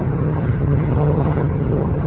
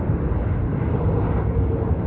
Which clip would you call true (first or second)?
second